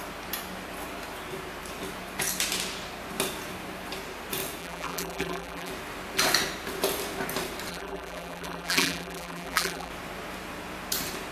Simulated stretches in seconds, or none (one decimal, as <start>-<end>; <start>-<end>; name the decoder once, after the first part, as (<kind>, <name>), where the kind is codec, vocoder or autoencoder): 4.6-5.7 (vocoder, BigVGAN v2); 7.7-9.9